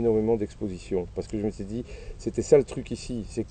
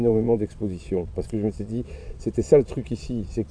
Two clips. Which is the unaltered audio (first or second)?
first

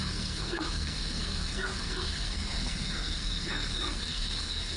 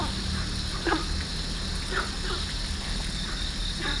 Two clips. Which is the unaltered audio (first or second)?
second